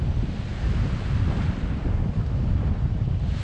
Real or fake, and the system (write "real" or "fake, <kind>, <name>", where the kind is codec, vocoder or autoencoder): real